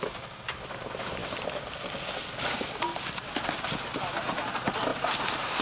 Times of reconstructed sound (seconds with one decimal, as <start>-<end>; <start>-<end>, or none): none